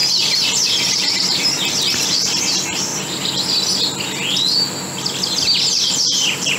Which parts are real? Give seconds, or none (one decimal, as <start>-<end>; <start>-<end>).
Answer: 2.9-5.9